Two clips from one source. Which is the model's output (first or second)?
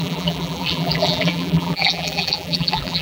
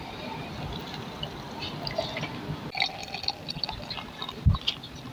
first